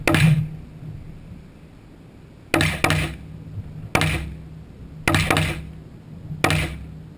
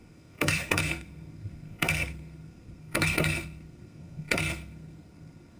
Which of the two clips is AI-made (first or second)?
second